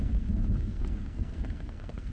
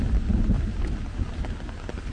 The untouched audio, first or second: second